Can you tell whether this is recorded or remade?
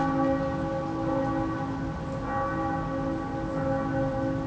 recorded